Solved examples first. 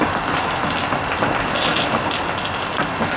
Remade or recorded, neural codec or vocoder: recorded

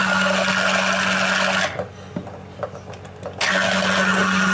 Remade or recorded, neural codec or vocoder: recorded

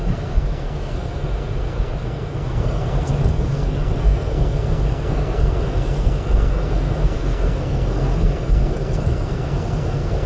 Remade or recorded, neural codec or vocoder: remade, codec, SNAC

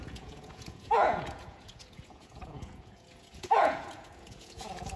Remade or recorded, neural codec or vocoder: remade, vocoder, Vocos